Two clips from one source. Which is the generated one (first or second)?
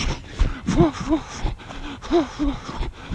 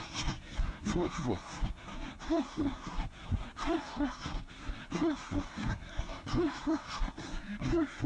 second